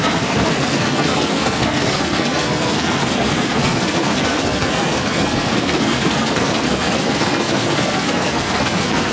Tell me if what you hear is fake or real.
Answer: fake